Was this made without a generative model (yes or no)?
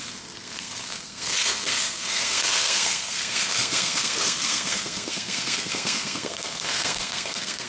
no